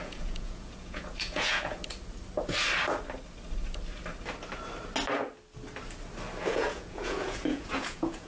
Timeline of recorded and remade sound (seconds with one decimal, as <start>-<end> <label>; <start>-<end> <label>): 0.0-1.8 remade; 1.8-6.4 recorded; 6.4-8.3 remade